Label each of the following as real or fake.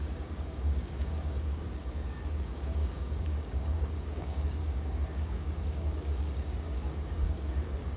fake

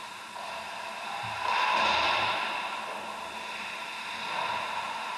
real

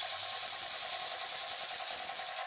real